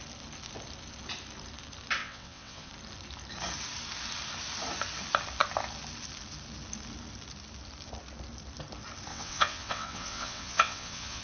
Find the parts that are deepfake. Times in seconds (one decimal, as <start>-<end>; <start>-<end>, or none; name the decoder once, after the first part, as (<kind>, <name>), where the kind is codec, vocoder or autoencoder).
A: 2.0-2.7 (vocoder, WaveNeXt); 9.1-11.2